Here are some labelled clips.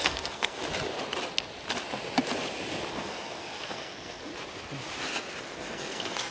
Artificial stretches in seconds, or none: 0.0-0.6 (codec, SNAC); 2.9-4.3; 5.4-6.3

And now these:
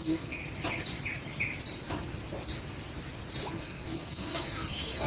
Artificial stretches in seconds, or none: 0.0-0.4 (codec, SNAC); 3.5-5.1

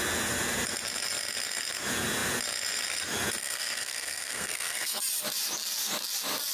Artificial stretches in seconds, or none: 3.4-5.0 (codec, SNAC)

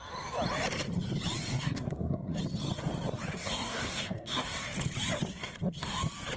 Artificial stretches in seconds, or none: 1.5-2.4 (codec, SNAC); 3.3-4.6; 5.3-6.0

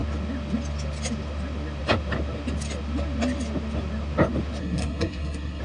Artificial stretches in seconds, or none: 4.6-5.6 (codec, SNAC)